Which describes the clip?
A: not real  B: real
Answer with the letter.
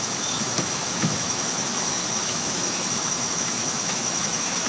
A